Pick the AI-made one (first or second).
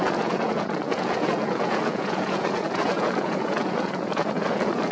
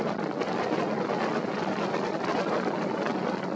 first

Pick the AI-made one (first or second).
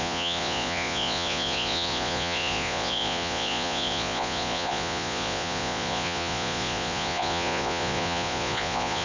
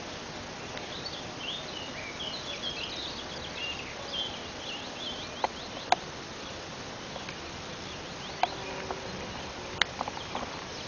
first